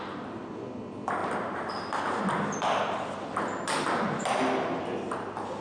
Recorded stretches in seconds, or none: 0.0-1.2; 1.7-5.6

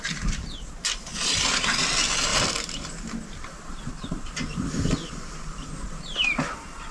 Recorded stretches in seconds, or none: 0.0-1.1; 1.6-2.3; 6.0-6.9

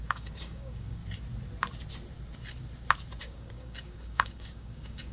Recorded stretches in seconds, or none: 1.0-3.2

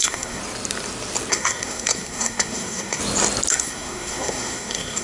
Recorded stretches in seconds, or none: 0.4-1.3; 3.0-3.5

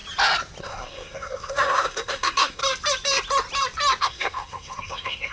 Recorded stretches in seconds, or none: 0.0-0.6; 2.6-4.0

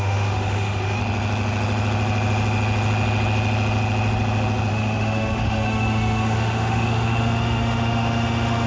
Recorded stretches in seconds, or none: 1.0-4.7

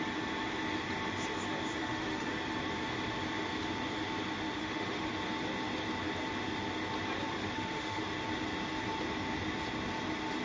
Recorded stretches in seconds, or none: 0.0-1.8; 2.3-4.6; 5.1-7.4; 8.0-10.4

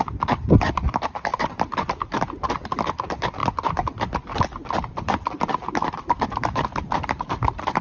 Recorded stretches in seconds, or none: 0.0-7.8